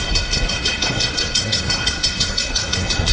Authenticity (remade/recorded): remade